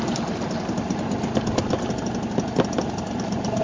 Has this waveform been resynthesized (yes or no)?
no